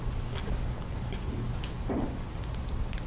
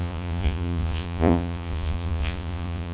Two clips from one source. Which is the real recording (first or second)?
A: first